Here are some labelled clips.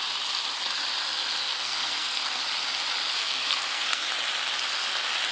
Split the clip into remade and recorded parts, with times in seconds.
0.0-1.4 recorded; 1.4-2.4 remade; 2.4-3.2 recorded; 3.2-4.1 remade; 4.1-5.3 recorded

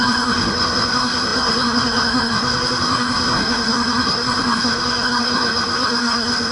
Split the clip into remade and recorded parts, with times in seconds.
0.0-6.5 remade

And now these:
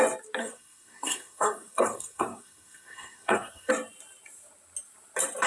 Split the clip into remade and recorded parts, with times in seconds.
0.0-0.4 recorded; 0.4-3.7 remade; 3.7-5.5 recorded

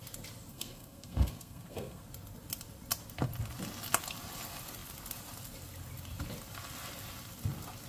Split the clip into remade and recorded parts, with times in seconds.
0.0-0.5 recorded; 0.5-2.0 remade; 2.0-7.9 recorded

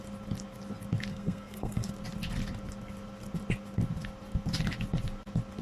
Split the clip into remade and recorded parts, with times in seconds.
0.0-1.1 recorded; 1.1-1.9 remade; 1.9-5.6 recorded

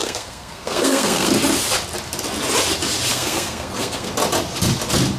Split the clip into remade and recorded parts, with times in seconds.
0.0-1.3 remade; 1.3-3.1 recorded; 3.1-4.1 remade; 4.1-5.2 recorded

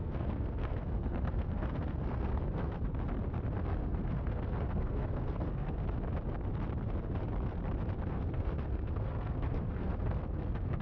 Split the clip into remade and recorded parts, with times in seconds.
0.0-2.9 remade; 2.9-3.6 recorded; 3.6-5.8 remade; 5.8-8.1 recorded; 8.1-10.8 remade

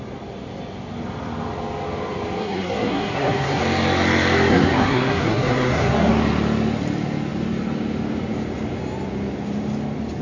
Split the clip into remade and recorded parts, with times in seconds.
0.0-2.4 recorded; 2.4-3.6 remade; 3.6-4.5 recorded; 4.5-6.1 remade; 6.1-10.2 recorded